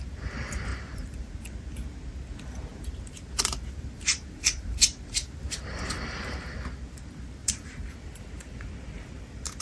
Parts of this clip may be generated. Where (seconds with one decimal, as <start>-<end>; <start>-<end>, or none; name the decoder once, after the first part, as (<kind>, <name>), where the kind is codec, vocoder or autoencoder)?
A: 0.7-1.3 (vocoder, BigVGAN v2); 2.7-6.5; 7.4-8.7